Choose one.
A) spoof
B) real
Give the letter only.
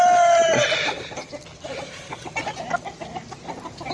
B